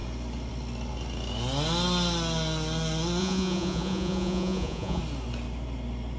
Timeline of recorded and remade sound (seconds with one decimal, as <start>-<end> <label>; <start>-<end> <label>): 0.0-3.2 recorded; 3.2-5.0 remade; 5.0-6.2 recorded